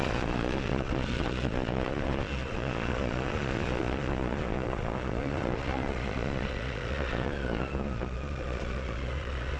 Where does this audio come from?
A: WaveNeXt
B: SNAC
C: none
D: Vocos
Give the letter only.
D